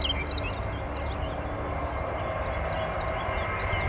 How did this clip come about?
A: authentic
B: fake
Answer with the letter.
A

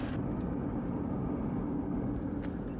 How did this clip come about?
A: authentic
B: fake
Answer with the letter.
A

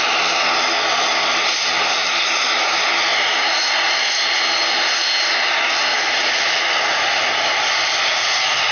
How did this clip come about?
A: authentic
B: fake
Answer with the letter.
A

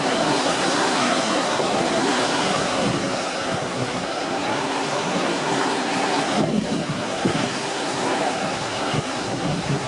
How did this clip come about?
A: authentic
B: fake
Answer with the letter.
B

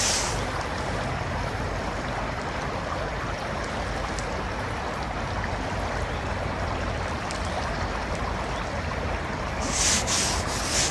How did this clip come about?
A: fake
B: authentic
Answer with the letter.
A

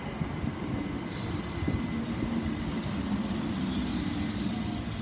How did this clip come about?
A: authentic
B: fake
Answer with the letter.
A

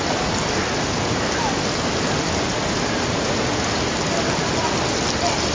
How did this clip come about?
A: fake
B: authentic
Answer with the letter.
B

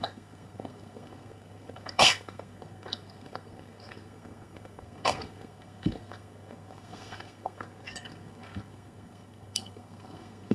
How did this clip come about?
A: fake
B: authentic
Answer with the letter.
A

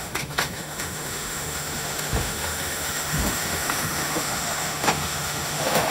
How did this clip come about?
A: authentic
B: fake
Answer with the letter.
B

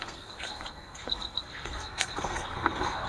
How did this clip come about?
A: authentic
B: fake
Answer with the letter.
B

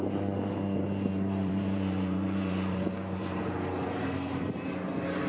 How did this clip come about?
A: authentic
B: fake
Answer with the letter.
B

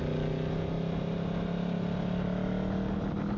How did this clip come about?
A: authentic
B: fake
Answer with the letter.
A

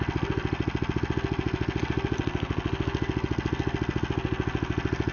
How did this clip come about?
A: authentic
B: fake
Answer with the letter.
A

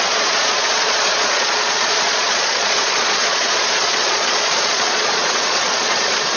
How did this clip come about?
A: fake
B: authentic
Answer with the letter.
A